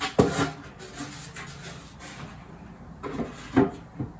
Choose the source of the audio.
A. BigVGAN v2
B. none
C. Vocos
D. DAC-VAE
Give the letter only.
B